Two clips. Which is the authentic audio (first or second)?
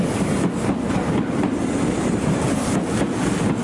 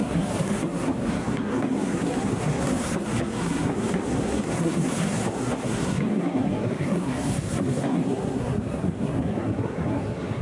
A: first